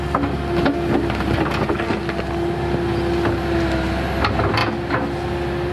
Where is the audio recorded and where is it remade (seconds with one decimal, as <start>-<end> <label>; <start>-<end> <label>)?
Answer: 0.0-5.7 recorded